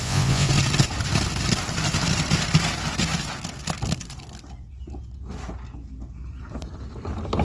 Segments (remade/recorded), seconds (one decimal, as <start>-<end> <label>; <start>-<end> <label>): 0.0-0.5 remade; 0.5-7.4 recorded